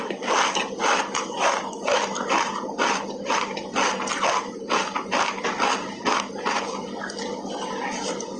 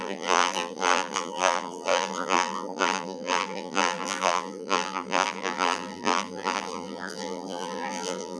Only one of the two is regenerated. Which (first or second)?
second